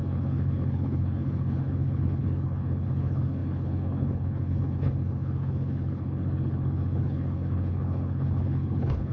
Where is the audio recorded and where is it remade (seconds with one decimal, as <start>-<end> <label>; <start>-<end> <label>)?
0.0-9.1 remade

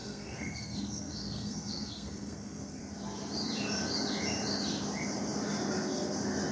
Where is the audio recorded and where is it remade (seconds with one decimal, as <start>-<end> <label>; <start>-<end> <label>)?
0.0-2.8 remade; 2.8-6.5 recorded

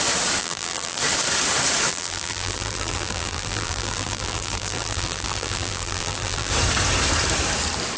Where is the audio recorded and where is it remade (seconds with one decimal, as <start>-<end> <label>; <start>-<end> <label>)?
0.0-0.4 recorded; 0.4-1.0 remade; 1.0-1.9 recorded; 1.9-6.5 remade; 6.5-8.0 recorded

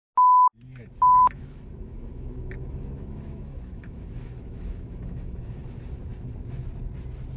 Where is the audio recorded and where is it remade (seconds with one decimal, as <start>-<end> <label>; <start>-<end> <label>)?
0.0-1.2 recorded; 1.2-5.6 remade; 5.6-7.4 recorded

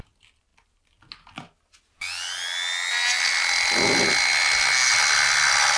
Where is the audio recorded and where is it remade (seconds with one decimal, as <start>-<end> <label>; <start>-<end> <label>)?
0.0-5.8 recorded

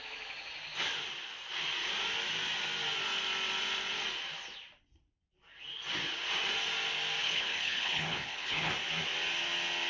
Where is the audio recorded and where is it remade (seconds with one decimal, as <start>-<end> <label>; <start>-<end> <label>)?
0.0-7.2 recorded; 7.2-8.7 remade; 8.7-9.9 recorded

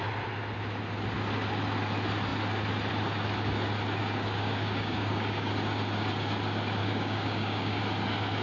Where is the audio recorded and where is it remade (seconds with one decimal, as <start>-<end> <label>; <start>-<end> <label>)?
0.0-4.0 recorded; 4.0-5.5 remade; 5.5-6.8 recorded; 6.8-7.8 remade; 7.8-8.4 recorded